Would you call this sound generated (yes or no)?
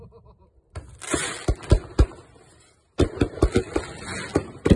no